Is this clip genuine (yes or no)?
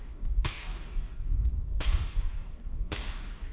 no